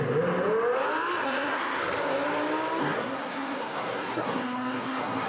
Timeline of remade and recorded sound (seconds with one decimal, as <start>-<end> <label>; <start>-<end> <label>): 0.0-1.2 recorded; 1.2-1.8 remade; 1.8-2.8 recorded; 2.8-5.3 remade